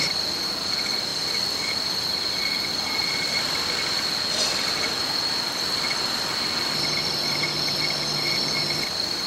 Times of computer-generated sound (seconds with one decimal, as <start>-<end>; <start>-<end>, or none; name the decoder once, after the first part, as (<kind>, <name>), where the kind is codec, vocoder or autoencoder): none